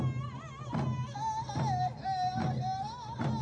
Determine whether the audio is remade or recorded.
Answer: recorded